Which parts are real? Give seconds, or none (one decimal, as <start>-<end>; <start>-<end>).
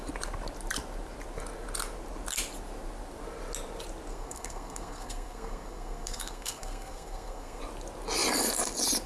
0.0-4.1; 7.6-9.1